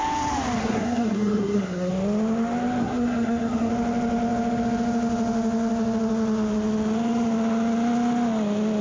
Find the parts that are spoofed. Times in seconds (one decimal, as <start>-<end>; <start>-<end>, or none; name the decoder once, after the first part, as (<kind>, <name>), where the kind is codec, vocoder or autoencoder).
0.6-1.9 (codec, SNAC); 2.8-3.7